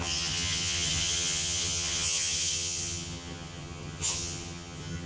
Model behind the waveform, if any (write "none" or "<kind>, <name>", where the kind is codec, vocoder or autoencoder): vocoder, HiFi-GAN